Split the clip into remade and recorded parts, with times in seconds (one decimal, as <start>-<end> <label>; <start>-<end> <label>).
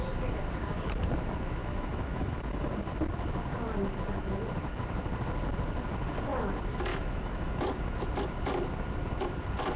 0.0-1.6 recorded; 1.6-2.7 remade; 2.7-6.9 recorded; 6.9-8.1 remade; 8.1-9.8 recorded